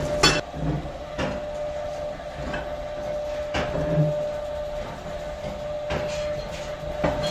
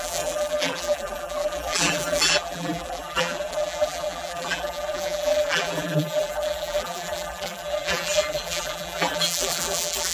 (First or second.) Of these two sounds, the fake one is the second